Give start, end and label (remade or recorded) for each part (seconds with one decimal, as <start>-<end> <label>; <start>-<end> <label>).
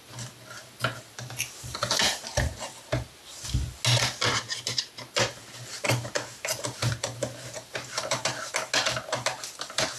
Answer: 0.0-2.0 recorded; 2.0-3.4 remade; 3.4-4.3 recorded; 4.3-5.0 remade; 5.0-5.4 recorded; 5.4-8.5 remade; 8.5-10.0 recorded